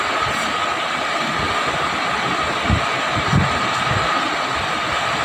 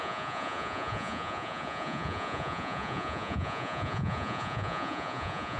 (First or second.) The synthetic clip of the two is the second